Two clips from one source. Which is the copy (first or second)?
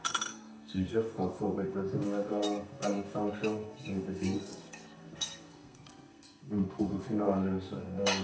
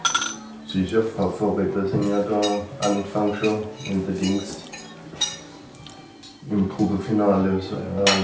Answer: first